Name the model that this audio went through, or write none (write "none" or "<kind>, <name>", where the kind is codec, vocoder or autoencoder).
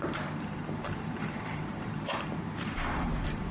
vocoder, BigVGAN v2